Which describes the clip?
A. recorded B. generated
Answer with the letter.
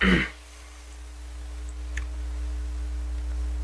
A